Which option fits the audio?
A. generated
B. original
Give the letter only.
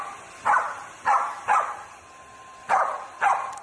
B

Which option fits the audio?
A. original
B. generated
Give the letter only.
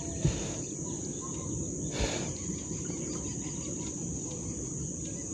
A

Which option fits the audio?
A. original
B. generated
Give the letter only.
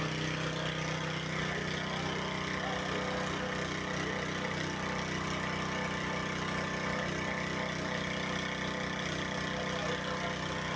A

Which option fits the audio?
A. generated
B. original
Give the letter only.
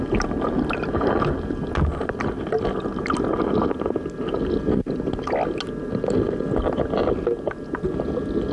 B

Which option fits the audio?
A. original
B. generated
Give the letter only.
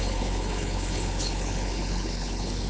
B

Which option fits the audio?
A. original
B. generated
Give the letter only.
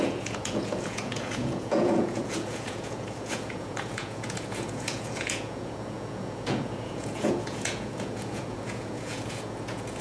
B